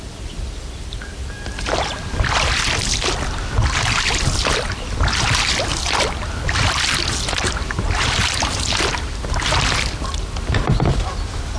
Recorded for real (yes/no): no